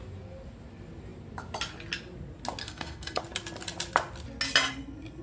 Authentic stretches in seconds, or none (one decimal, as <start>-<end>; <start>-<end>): 0.0-2.6; 3.2-5.2